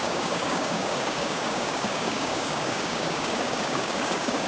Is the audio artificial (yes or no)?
yes